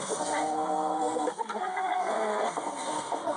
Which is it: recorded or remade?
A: remade